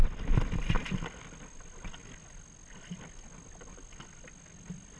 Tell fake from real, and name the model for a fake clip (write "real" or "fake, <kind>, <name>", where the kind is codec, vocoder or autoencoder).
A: real